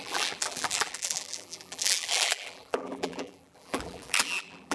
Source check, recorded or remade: remade